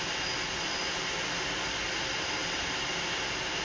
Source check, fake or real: real